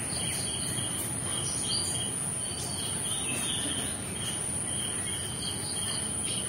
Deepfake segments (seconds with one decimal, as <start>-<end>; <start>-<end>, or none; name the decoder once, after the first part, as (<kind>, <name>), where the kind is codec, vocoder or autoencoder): none